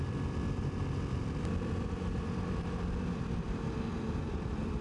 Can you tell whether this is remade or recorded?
remade